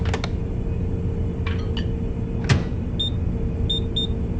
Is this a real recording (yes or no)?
yes